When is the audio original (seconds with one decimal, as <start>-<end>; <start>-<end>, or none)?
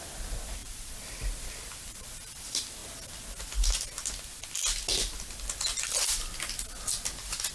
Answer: 2.8-7.5